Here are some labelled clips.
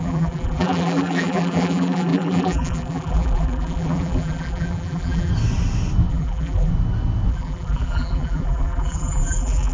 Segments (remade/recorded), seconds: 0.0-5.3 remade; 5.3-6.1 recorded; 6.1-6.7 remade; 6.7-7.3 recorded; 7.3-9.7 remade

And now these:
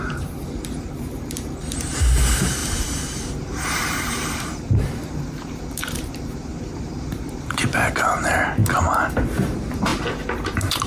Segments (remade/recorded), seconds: 0.0-10.9 remade

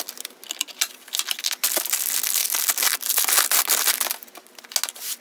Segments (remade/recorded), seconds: 0.0-5.2 recorded

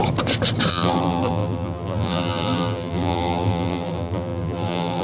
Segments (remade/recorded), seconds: 0.0-0.7 recorded; 0.7-5.0 remade

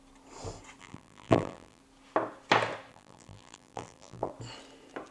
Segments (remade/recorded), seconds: 0.0-0.8 recorded; 0.8-1.8 remade; 1.8-2.9 recorded; 2.9-4.3 remade; 4.3-5.1 recorded

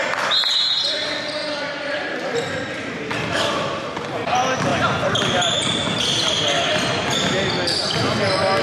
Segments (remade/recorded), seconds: 0.0-1.4 recorded; 1.4-3.0 remade; 3.0-4.7 recorded; 4.7-6.3 remade; 6.3-8.6 recorded